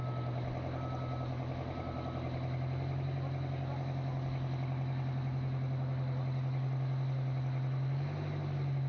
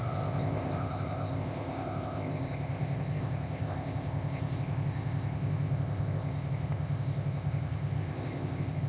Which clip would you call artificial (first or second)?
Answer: second